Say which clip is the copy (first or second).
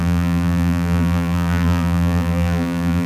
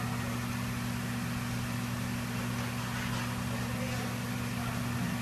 first